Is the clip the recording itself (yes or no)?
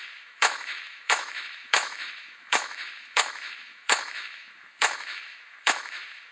no